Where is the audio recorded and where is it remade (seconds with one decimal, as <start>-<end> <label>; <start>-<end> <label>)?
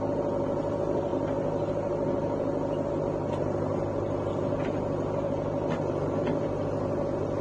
0.0-7.4 recorded